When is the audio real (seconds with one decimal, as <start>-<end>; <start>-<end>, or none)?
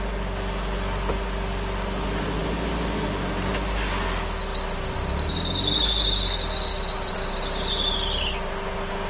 0.0-4.5; 5.3-6.7; 8.2-9.1